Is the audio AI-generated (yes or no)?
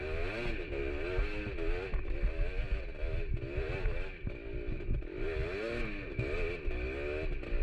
no